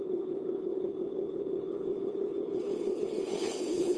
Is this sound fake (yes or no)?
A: yes